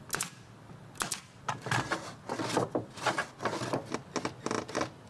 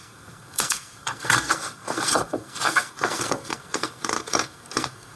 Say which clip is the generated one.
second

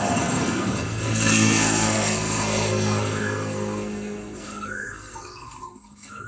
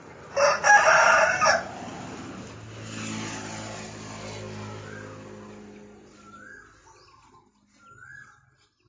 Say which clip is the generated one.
first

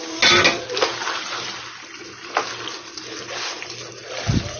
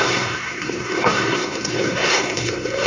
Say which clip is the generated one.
second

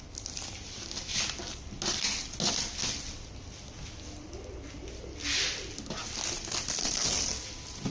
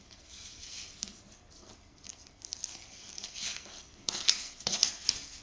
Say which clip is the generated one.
second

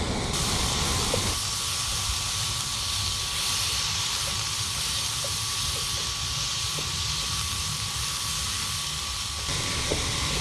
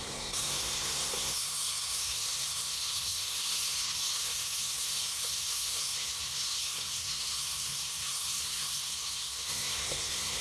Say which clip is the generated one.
second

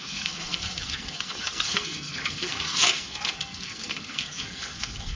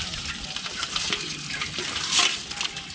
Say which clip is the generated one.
first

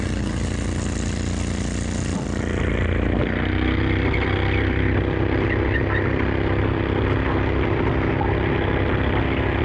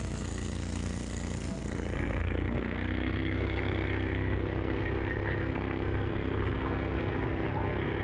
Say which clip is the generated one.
second